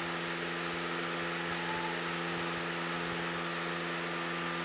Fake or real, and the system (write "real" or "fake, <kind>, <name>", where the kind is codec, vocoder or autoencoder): real